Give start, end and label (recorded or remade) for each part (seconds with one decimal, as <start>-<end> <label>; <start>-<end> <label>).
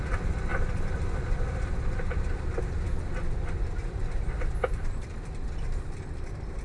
0.0-3.8 recorded; 3.8-5.3 remade; 5.3-6.6 recorded